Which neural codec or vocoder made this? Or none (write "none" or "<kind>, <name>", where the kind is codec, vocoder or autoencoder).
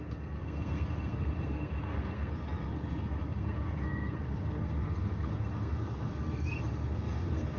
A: codec, SNAC